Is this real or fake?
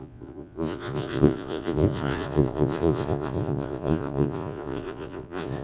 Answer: fake